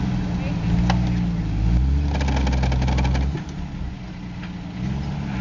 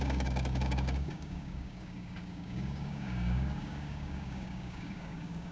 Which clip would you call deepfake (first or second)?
second